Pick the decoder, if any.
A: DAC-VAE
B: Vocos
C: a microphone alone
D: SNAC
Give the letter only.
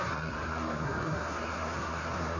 D